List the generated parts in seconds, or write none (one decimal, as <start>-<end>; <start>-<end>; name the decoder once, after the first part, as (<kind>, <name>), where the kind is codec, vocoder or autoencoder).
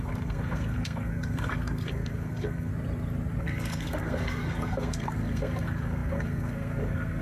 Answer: 0.0-2.7 (codec, SNAC); 3.4-7.2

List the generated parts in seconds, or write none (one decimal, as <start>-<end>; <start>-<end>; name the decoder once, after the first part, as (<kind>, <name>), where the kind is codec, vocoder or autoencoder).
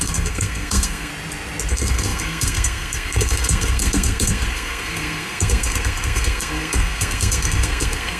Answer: 0.0-1.1 (codec, SNAC); 1.7-8.2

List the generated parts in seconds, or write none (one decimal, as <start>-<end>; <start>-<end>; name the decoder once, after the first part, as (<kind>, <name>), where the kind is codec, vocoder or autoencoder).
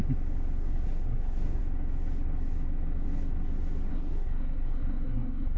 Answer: 0.6-1.6 (codec, SNAC); 3.9-5.6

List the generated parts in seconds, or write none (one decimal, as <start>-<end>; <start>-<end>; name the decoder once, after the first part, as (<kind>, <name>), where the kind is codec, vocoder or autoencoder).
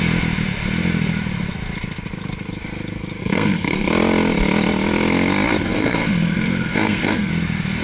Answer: 3.2-3.9 (codec, SNAC); 5.6-7.3